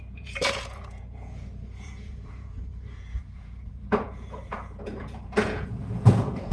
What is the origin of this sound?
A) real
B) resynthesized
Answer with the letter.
B